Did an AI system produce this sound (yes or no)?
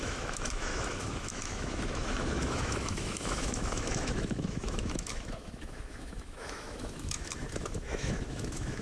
yes